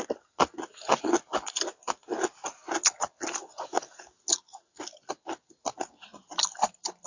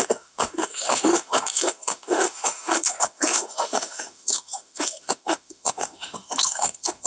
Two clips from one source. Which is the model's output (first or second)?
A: second